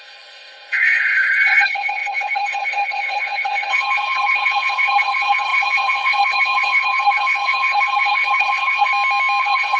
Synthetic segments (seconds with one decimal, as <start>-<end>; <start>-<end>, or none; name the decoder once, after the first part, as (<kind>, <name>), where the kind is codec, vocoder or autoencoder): 0.0-8.9 (codec, HILCodec); 9.4-9.8